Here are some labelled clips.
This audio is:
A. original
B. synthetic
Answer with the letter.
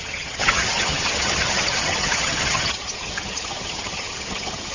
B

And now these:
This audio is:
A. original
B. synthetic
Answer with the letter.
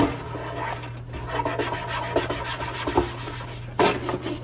A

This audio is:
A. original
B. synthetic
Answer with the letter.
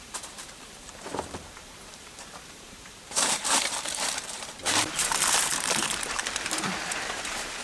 B